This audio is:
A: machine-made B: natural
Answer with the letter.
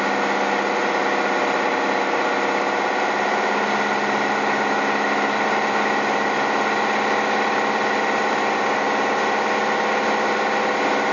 B